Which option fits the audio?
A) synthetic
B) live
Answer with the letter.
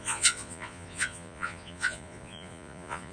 A